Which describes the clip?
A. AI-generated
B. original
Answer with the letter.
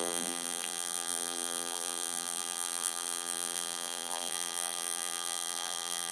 A